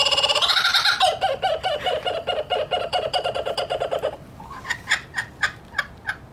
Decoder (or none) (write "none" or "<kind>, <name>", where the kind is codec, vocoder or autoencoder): none